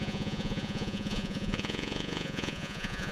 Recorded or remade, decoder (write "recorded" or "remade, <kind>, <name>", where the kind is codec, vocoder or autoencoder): remade, vocoder, Vocos